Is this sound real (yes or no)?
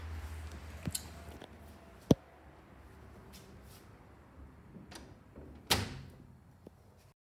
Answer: yes